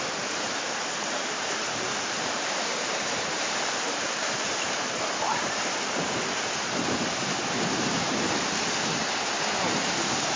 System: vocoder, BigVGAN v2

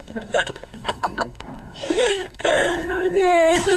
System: codec, SNAC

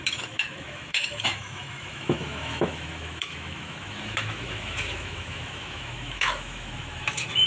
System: autoencoder, DAC-VAE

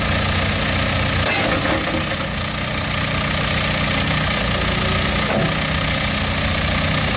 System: none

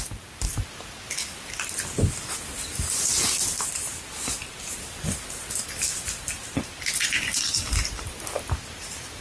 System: none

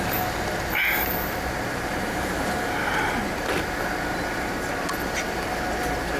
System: none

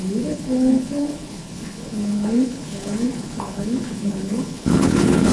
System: codec, HILCodec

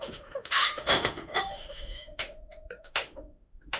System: autoencoder, DAC-VAE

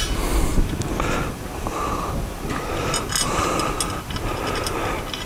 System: none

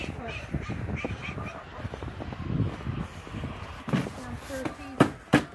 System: none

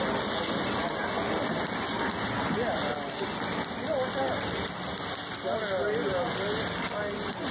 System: none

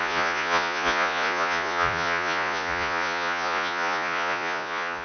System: vocoder, Vocos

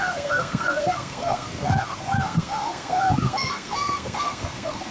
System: codec, SNAC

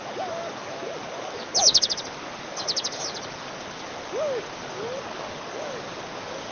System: codec, DAC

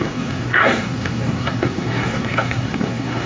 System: codec, SNAC